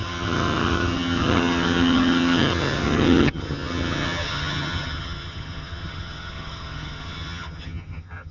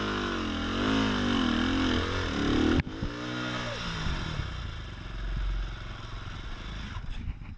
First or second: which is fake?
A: first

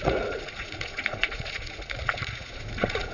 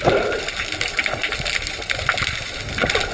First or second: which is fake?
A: first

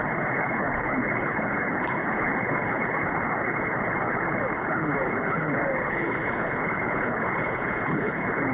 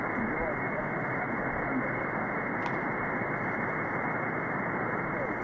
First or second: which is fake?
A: first